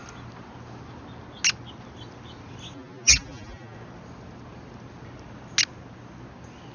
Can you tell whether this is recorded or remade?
recorded